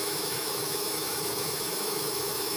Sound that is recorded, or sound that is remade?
remade